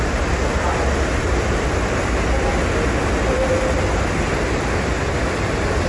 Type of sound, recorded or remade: recorded